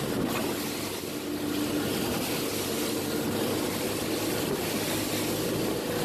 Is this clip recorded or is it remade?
recorded